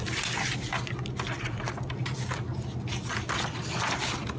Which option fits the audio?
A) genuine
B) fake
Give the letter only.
A